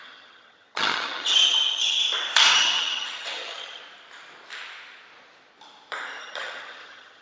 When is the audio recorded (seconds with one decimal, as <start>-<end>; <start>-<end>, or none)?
2.0-2.5; 3.8-6.2

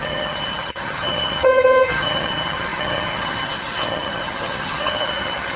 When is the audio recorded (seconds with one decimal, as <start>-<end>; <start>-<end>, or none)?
none

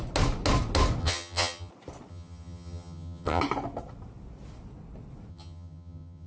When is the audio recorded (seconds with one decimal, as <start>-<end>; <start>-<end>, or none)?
0.0-1.0; 1.7-2.1; 3.4-5.3

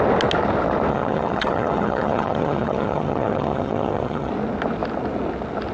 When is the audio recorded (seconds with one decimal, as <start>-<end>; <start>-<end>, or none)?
0.0-0.9; 4.3-5.7

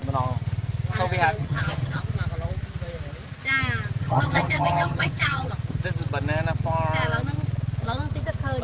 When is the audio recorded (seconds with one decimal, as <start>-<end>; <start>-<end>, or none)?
0.0-1.4; 2.0-4.0; 5.5-8.6